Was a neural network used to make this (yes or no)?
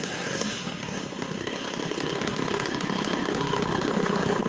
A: yes